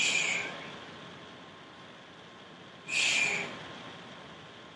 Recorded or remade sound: recorded